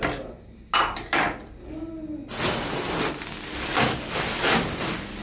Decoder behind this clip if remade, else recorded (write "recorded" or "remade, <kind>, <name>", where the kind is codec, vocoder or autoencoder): recorded